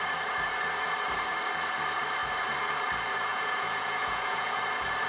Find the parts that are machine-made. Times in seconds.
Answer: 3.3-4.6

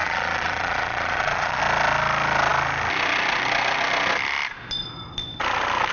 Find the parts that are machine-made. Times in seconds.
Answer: 0.0-1.6

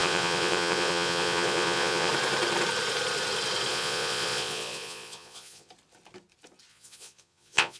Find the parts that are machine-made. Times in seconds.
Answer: 0.0-2.1; 3.7-5.7; 6.7-7.8

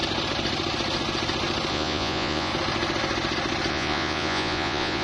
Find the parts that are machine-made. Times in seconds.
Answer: 1.7-2.5; 3.7-5.0

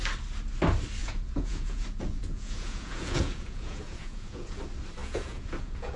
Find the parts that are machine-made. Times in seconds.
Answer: 1.0-4.6; 5.0-6.0